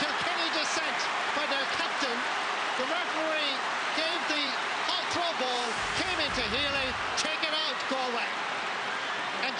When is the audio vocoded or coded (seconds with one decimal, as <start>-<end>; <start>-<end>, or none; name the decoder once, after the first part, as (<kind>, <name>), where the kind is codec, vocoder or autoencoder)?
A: 1.6-5.9 (vocoder, BigVGAN v2); 7.6-8.4